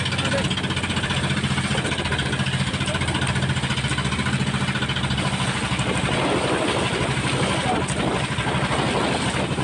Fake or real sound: real